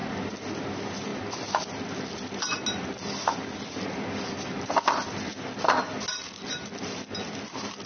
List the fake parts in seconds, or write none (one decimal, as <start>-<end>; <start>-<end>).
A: none